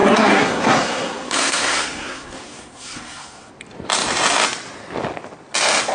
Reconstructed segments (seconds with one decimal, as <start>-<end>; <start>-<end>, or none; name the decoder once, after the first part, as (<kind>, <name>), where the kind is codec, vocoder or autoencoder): 0.0-3.5 (codec, SNAC)